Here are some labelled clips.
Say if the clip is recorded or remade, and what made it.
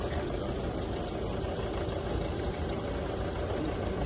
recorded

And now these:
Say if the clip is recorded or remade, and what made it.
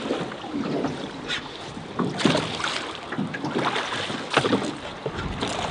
recorded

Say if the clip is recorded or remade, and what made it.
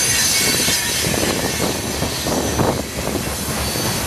recorded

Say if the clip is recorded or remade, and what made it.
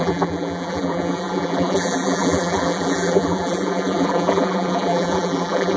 remade, vocoder, BigVGAN v2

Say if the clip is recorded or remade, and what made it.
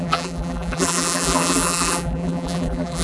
remade, vocoder, BigVGAN v2